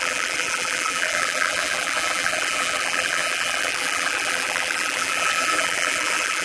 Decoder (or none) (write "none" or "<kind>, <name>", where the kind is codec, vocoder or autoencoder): vocoder, BigVGAN v2